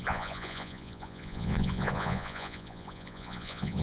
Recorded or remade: remade